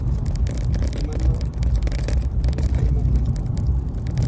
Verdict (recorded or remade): recorded